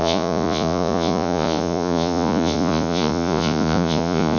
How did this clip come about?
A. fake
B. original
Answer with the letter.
A